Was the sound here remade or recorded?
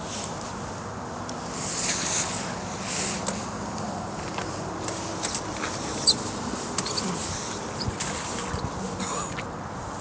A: recorded